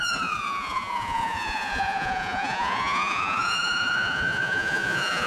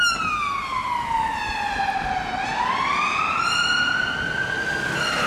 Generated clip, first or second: first